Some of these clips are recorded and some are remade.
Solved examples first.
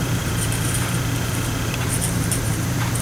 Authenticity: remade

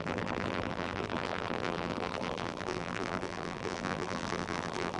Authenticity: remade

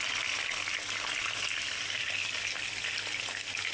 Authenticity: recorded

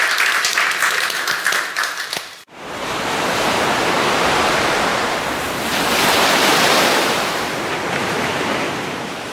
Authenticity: remade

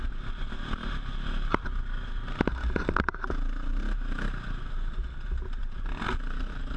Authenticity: recorded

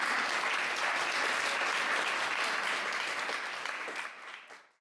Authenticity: recorded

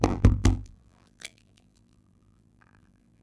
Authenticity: remade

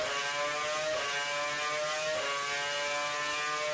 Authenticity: recorded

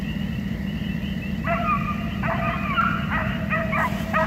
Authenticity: remade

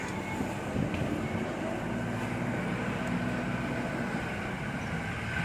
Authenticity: recorded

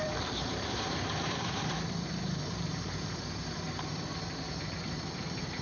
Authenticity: remade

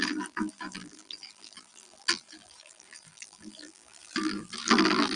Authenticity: remade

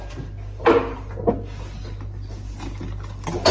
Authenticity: recorded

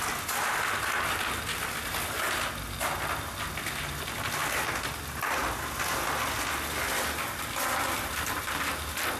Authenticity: recorded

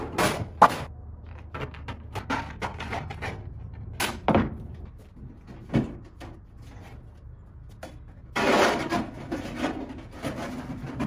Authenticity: recorded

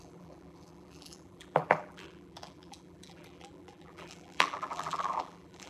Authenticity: remade